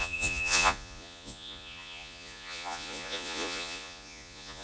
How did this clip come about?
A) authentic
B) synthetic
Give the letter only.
B